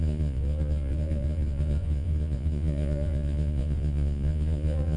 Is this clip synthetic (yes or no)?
yes